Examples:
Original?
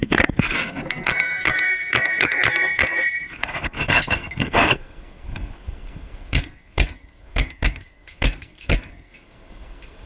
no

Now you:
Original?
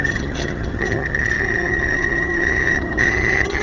no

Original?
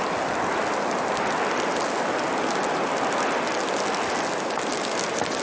yes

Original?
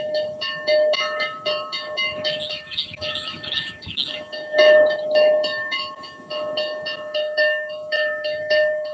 no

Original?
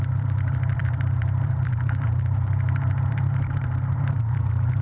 no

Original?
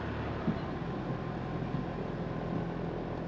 yes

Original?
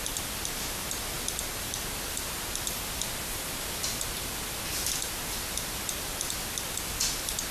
yes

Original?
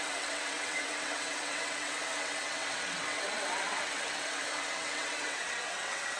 no